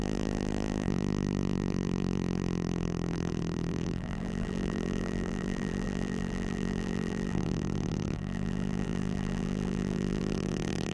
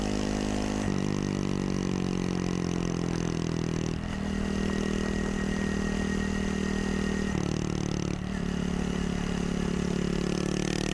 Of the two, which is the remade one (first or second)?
first